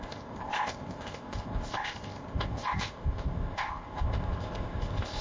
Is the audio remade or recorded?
remade